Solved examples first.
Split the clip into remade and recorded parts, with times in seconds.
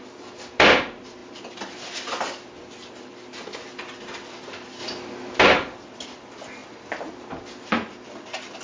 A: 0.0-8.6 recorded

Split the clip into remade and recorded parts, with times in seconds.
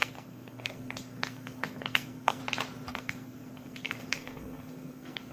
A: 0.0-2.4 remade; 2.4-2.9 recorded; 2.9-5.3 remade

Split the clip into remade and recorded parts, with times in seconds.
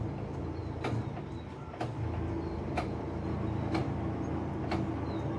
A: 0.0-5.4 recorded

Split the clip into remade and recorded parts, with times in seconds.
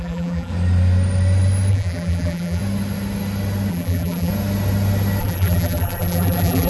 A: 0.0-0.5 remade; 0.5-1.7 recorded; 1.7-2.6 remade; 2.6-3.7 recorded; 3.7-4.3 remade; 4.3-5.2 recorded; 5.2-6.7 remade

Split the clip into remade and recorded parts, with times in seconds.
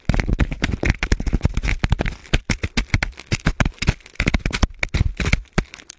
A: 0.0-6.0 recorded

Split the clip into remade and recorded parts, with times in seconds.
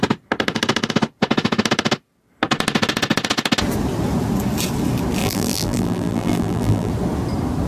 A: 0.0-5.2 recorded; 5.2-6.9 remade; 6.9-7.7 recorded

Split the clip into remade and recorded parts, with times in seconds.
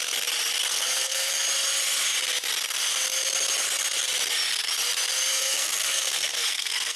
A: 0.0-0.7 recorded; 0.7-1.3 remade; 1.3-5.3 recorded; 5.3-7.0 remade